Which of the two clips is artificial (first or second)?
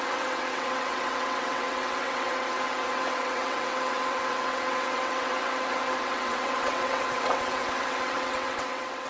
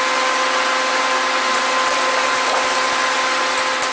first